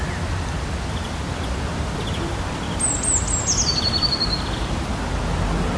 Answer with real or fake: real